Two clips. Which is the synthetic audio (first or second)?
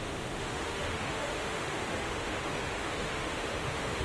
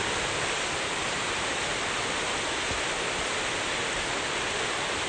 first